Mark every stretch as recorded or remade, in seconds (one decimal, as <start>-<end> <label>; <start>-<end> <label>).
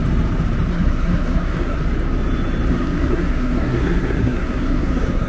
0.0-0.7 recorded; 0.7-1.8 remade; 1.8-2.7 recorded; 2.7-5.3 remade